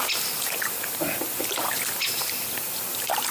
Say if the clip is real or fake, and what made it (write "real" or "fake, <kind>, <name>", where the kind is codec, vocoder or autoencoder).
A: fake, vocoder, BigVGAN v2